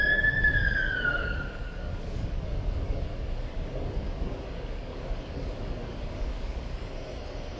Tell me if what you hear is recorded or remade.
remade